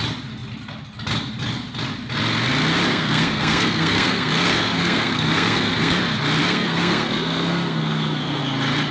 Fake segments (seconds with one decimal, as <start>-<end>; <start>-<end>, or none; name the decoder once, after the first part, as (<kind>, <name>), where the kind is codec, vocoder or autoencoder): 2.9-6.0 (codec, SNAC); 6.4-8.4